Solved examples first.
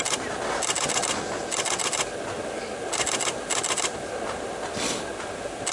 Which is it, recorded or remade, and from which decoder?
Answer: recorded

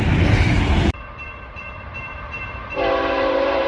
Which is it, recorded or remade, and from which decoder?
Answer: remade, vocoder, BigVGAN v2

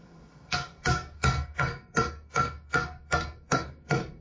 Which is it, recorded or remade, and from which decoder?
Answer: remade, codec, SNAC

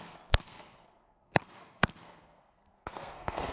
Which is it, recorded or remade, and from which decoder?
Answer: remade, codec, SNAC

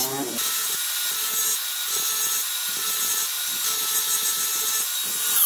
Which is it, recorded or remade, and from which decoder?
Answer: recorded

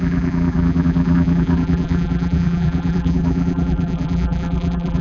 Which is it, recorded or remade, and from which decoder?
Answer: remade, vocoder, BigVGAN v2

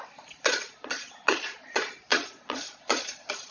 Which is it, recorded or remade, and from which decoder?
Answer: remade, vocoder, Vocos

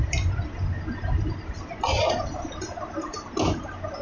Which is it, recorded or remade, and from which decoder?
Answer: recorded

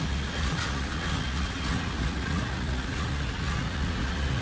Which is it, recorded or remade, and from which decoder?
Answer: remade, vocoder, Vocos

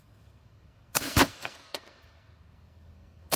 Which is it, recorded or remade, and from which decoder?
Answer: remade, codec, SNAC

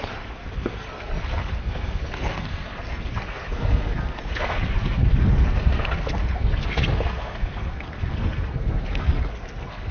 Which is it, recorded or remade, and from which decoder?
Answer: remade, codec, SNAC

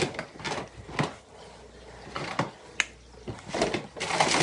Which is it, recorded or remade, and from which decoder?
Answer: recorded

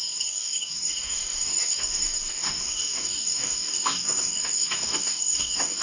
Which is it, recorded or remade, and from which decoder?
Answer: remade, codec, DAC